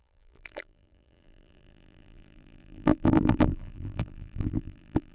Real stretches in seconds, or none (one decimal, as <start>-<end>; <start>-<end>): none